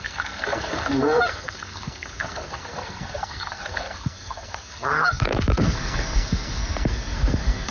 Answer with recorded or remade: remade